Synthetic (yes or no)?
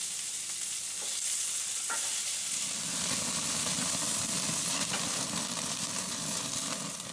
no